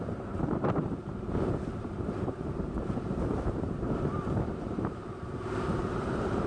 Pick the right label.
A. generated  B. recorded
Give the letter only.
A